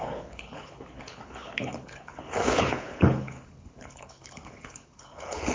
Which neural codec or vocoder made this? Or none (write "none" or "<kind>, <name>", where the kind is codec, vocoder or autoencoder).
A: codec, HILCodec